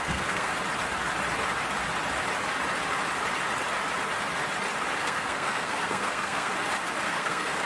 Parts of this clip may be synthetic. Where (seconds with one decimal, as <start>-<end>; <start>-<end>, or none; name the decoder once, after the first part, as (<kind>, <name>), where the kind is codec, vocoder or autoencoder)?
0.0-0.5 (codec, SNAC); 5.0-6.5; 7.1-7.7